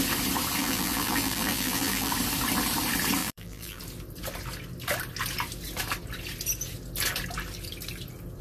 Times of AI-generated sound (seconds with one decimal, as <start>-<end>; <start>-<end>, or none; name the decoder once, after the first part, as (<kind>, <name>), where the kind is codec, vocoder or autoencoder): 0.6-2.1 (vocoder, BigVGAN v2); 3.2-3.8